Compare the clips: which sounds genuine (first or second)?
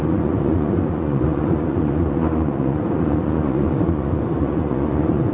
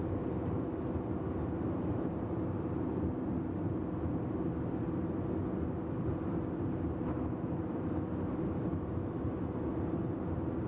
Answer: second